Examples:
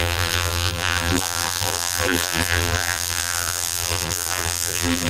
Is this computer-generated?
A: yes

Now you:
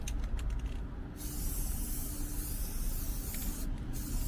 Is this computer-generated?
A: no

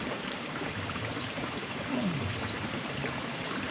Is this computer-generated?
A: yes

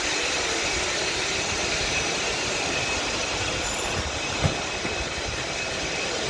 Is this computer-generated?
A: no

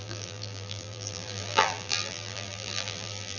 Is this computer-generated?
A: yes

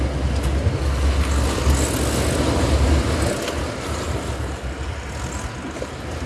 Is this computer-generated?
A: no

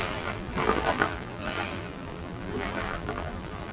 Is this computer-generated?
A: yes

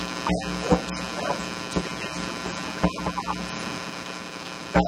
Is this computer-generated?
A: no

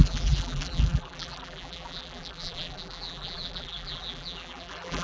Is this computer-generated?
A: yes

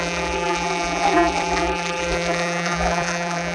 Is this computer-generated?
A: yes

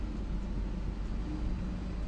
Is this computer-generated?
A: no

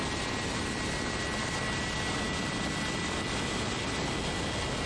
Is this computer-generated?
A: no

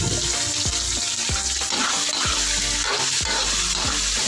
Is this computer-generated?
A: no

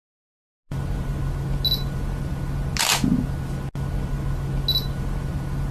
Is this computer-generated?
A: no